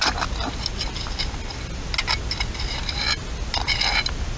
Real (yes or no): yes